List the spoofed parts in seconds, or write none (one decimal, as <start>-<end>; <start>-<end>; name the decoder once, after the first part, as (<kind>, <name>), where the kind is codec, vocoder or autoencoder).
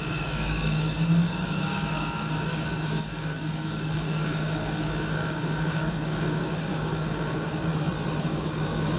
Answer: 0.0-7.7 (codec, DAC); 8.2-9.0